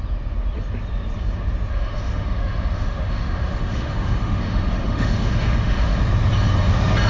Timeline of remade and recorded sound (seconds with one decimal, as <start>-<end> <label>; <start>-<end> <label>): 0.0-1.7 recorded; 1.7-6.0 remade; 6.0-7.1 recorded